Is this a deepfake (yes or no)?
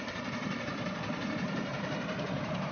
yes